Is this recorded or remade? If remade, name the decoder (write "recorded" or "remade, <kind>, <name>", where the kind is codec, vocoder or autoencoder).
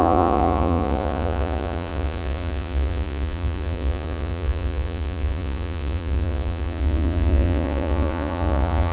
remade, vocoder, Vocos